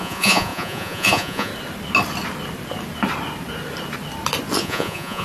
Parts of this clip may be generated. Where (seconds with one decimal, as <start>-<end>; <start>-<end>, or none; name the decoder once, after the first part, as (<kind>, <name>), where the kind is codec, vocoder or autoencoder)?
0.0-1.5 (vocoder, Vocos); 4.6-5.2